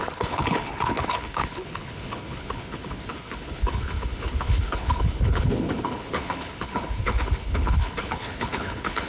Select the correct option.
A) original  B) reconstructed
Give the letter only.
B